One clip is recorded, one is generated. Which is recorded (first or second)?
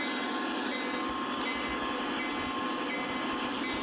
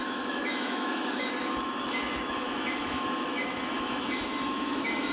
first